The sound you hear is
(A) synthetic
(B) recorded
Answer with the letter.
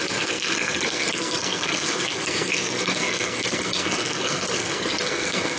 A